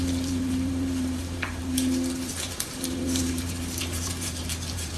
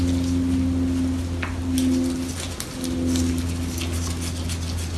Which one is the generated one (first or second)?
first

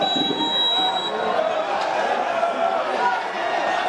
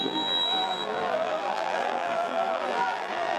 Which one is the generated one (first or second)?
second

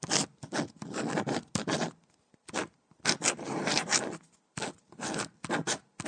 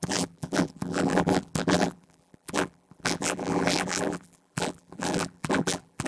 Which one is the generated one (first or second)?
second